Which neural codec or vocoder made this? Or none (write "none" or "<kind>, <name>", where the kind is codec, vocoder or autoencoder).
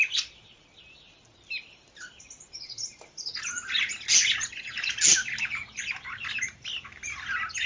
none